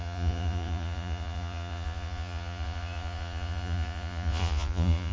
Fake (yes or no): yes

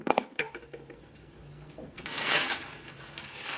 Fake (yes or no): yes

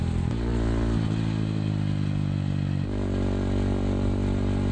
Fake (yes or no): no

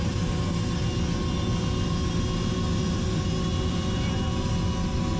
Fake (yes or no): no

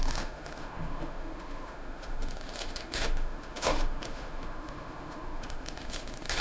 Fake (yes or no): yes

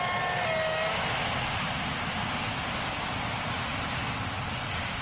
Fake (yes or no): no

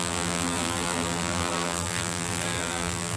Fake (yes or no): yes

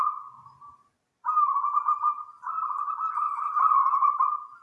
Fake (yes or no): yes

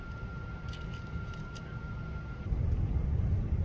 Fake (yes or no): no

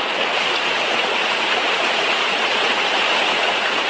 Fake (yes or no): yes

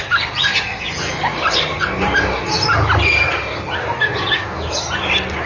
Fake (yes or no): no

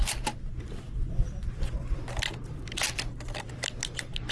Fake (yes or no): yes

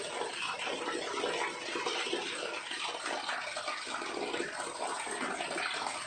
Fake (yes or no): no